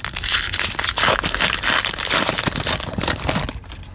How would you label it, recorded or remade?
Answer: recorded